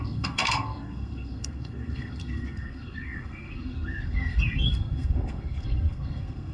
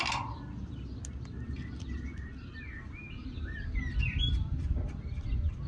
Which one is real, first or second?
second